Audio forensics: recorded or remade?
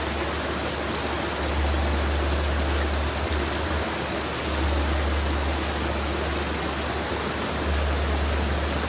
recorded